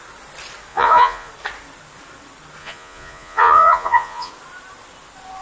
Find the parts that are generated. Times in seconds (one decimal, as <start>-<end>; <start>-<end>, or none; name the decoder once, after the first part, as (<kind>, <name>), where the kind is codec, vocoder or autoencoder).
0.7-1.3 (vocoder, Vocos); 2.6-4.3